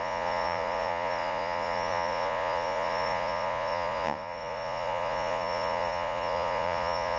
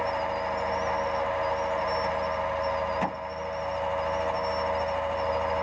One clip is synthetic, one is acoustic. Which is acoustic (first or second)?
second